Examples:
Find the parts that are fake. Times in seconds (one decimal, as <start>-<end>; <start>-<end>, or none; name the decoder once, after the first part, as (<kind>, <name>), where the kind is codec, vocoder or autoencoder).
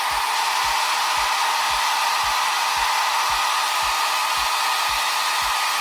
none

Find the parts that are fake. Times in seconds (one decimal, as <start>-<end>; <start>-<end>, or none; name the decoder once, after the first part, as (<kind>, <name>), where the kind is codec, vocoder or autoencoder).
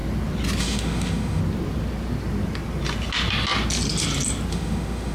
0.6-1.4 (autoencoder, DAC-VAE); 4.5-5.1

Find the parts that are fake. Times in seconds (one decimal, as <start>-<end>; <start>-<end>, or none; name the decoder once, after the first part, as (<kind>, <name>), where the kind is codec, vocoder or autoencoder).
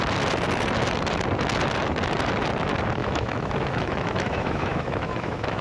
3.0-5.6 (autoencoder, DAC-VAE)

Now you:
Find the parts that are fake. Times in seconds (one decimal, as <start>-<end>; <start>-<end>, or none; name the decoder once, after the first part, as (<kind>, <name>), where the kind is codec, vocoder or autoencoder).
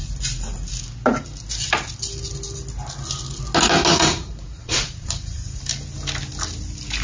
3.9-5.6 (vocoder, Vocos)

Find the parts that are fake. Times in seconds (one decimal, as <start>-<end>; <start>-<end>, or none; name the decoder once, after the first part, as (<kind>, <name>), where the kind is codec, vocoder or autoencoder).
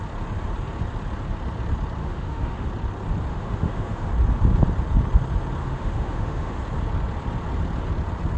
2.0-2.7 (autoencoder, DAC-VAE); 3.3-4.1; 5.6-6.6